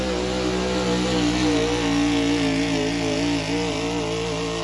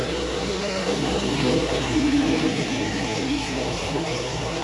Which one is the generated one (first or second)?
second